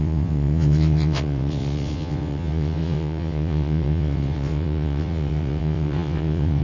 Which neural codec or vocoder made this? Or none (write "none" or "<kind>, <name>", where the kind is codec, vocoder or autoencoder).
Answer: vocoder, WaveNeXt